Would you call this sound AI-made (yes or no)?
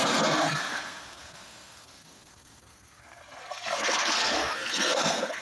yes